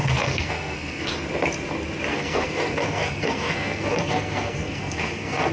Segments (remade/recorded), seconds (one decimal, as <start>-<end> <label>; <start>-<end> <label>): 0.0-1.1 remade; 1.1-2.1 recorded; 2.1-5.5 remade

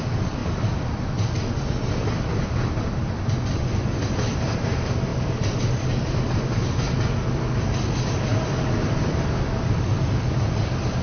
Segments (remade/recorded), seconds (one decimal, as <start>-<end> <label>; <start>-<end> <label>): 0.0-0.4 recorded; 0.4-2.9 remade; 2.9-8.3 recorded; 8.3-10.0 remade; 10.0-11.0 recorded